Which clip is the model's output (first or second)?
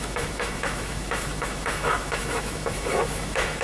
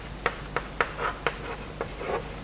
first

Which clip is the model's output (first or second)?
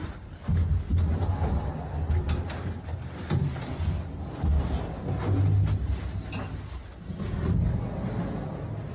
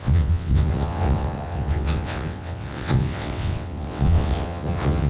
second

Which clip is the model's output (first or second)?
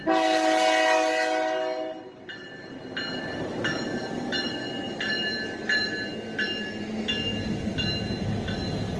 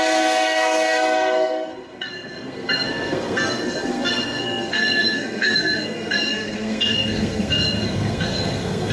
second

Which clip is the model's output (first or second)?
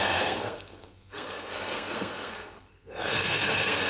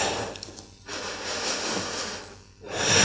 first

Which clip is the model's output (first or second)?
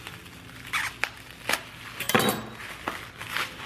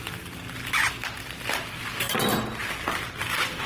second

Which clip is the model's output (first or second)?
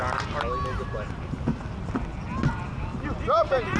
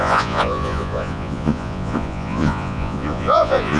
second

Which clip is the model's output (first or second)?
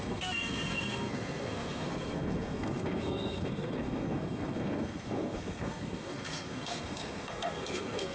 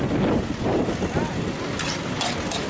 first